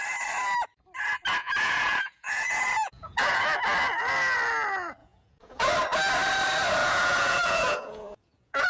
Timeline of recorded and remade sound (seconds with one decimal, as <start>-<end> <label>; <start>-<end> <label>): 0.0-1.4 recorded; 1.4-3.4 remade; 3.4-5.0 recorded; 5.0-5.7 remade; 5.7-6.8 recorded; 6.8-8.7 remade